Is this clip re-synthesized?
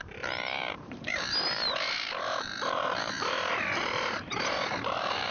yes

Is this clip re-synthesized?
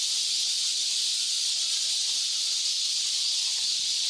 no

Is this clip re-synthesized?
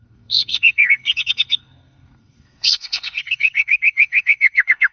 yes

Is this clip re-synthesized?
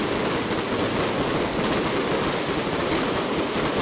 no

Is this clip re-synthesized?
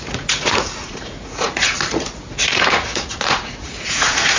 yes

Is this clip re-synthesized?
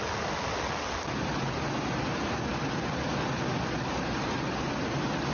no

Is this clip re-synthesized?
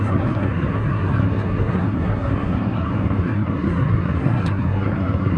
yes